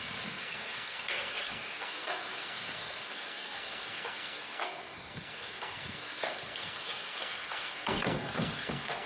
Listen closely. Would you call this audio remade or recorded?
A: remade